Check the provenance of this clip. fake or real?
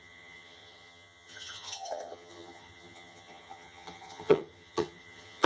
fake